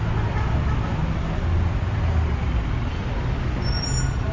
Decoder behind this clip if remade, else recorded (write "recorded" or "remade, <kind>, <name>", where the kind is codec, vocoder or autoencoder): recorded